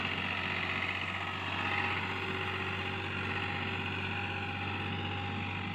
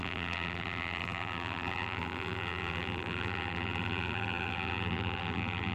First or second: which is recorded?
first